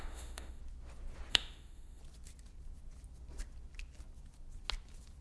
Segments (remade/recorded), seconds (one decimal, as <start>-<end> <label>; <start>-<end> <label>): 0.0-0.6 remade; 0.6-1.3 recorded; 1.3-2.0 remade; 2.0-5.2 recorded